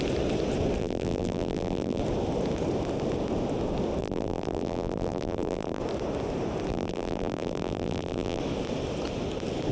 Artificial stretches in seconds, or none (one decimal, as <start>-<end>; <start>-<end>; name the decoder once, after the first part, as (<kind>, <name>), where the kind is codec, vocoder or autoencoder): 0.8-2.0 (vocoder, BigVGAN v2); 4.0-5.8; 6.7-8.4